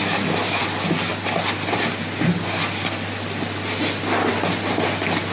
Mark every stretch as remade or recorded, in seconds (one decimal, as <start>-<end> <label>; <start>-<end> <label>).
0.0-0.6 remade; 0.6-5.3 recorded